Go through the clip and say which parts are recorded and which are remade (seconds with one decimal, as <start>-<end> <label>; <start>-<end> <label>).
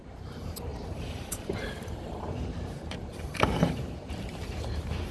0.0-5.1 remade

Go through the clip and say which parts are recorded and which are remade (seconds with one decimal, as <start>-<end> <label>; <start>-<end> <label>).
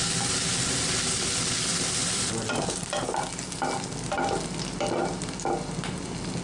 0.0-1.7 recorded; 1.7-5.5 remade; 5.5-6.4 recorded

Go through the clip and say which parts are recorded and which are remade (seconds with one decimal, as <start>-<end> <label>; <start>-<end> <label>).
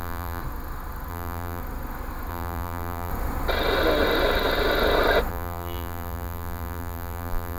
0.0-0.4 remade; 0.4-1.1 recorded; 1.1-1.6 remade; 1.6-2.3 recorded; 2.3-3.1 remade; 3.1-5.3 recorded; 5.3-7.6 remade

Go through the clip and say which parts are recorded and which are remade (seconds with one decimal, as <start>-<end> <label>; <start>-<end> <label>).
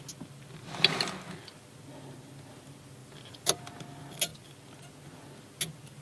0.0-3.0 recorded; 3.0-3.6 remade; 3.6-6.0 recorded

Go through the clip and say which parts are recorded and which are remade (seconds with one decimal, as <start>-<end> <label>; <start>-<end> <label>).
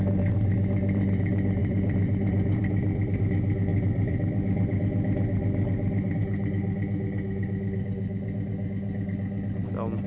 0.0-1.6 recorded; 1.6-3.2 remade; 3.2-3.7 recorded; 3.7-4.8 remade; 4.8-5.4 recorded; 5.4-6.1 remade; 6.1-10.1 recorded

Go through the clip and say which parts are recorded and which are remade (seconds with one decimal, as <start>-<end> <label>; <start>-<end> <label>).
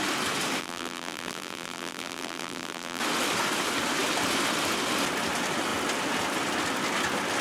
0.0-0.6 recorded; 0.6-3.0 remade; 3.0-7.4 recorded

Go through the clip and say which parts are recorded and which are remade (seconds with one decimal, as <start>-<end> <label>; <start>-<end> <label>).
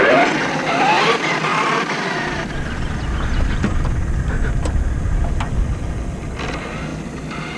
0.0-1.5 recorded; 1.5-5.9 remade; 5.9-7.6 recorded